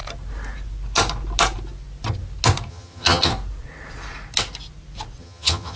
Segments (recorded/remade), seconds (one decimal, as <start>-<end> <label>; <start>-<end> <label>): 0.0-2.7 recorded; 2.7-3.3 remade; 3.3-5.2 recorded; 5.2-5.8 remade